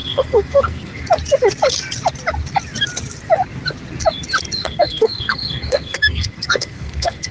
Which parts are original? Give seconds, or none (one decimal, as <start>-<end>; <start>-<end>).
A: 1.0-4.6